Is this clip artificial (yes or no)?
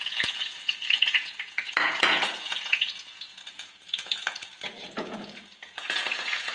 yes